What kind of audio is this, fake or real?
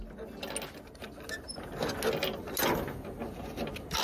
real